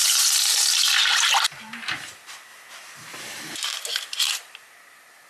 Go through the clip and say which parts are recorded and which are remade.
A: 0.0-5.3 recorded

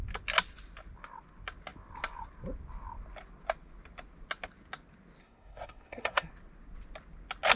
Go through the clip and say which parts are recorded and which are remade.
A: 0.0-5.2 recorded; 5.2-6.3 remade; 6.3-7.6 recorded

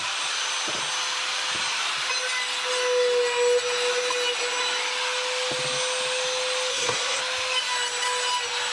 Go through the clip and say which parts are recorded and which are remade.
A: 0.0-6.7 recorded; 6.7-7.2 remade; 7.2-8.7 recorded

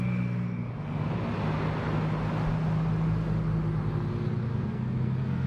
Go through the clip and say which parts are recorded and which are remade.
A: 0.0-4.5 recorded; 4.5-5.5 remade

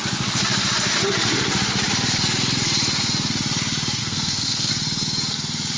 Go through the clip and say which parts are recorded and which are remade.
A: 0.0-4.0 recorded; 4.0-4.7 remade; 4.7-5.8 recorded

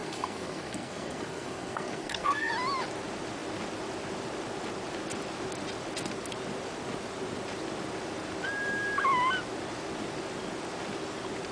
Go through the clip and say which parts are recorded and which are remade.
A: 0.0-2.5 remade; 2.5-11.5 recorded

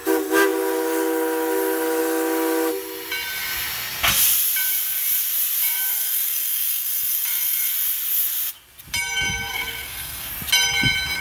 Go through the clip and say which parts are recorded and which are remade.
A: 0.0-5.9 recorded; 5.9-7.7 remade; 7.7-9.5 recorded; 9.5-10.3 remade; 10.3-11.2 recorded